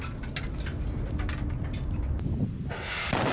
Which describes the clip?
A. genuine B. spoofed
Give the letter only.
A